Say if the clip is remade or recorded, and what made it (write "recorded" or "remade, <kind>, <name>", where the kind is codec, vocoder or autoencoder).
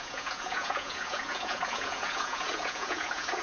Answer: remade, vocoder, Vocos